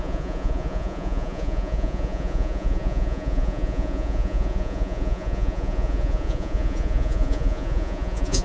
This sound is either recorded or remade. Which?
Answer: remade